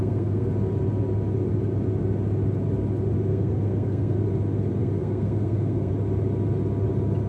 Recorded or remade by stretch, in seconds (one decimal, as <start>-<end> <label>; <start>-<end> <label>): 0.0-0.5 remade; 0.5-3.3 recorded; 3.3-4.2 remade; 4.2-4.8 recorded; 4.8-5.9 remade; 5.9-7.3 recorded

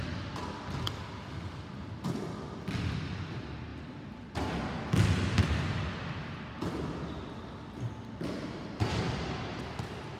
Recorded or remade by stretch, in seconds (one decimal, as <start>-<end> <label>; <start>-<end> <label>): 0.0-10.2 recorded

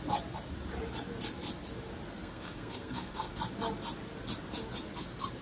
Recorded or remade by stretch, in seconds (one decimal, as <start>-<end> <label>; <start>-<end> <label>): 0.0-2.2 recorded; 2.2-3.4 remade; 3.4-5.4 recorded